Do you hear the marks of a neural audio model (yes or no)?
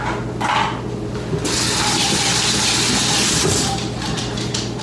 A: no